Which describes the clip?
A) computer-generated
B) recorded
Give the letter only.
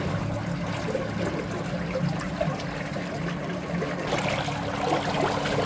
B